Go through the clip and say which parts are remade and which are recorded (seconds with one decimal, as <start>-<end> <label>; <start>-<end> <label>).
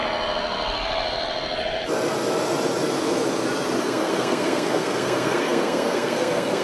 0.0-3.8 recorded; 3.8-6.6 remade